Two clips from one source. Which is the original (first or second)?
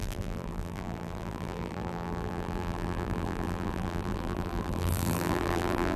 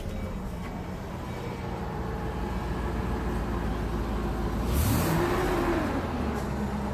second